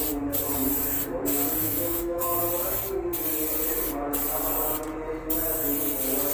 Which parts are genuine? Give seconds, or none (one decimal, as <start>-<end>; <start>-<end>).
0.0-1.6; 2.4-6.3